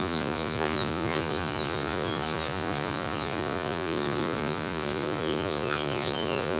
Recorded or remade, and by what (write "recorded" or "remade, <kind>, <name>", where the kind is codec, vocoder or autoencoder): remade, vocoder, Vocos